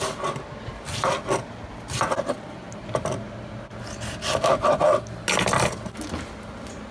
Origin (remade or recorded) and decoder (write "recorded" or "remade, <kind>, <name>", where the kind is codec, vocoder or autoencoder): recorded